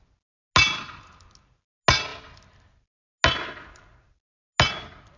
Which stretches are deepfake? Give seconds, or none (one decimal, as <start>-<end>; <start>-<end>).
none